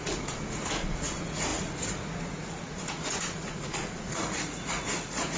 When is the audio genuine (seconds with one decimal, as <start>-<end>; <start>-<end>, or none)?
none